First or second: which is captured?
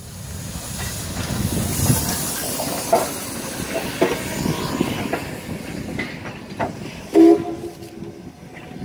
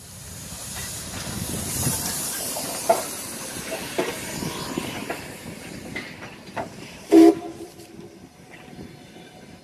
first